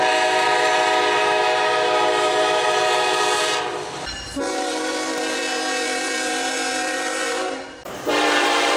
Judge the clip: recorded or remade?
remade